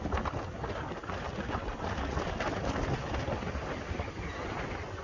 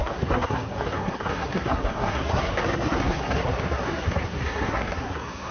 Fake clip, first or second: second